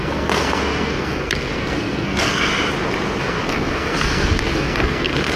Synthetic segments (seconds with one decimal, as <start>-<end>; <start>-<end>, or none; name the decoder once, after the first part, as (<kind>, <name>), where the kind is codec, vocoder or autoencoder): 0.0-2.5 (codec, SNAC); 3.2-5.4